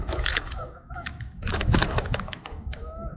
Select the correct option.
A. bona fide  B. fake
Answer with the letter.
B